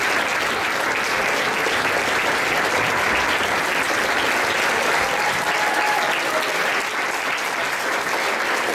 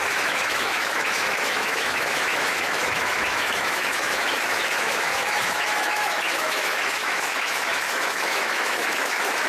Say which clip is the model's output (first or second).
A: second